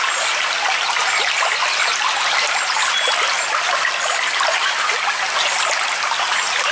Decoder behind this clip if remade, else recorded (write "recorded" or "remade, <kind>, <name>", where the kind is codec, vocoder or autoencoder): recorded